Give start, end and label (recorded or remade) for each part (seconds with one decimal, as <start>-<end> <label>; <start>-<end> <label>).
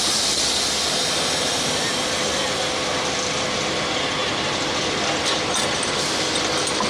0.0-6.9 recorded